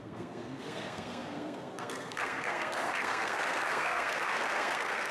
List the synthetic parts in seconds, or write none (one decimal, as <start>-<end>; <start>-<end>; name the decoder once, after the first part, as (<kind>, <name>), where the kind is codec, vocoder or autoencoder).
0.0-5.1 (codec, SNAC)